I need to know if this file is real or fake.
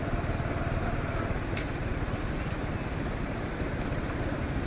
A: real